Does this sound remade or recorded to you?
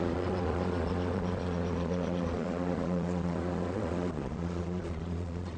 remade